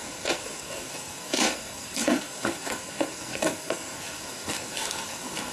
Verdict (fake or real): fake